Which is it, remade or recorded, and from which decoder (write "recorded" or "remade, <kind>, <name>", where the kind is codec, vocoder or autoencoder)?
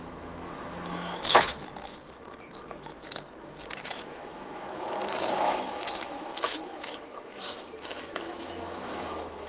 remade, autoencoder, DAC-VAE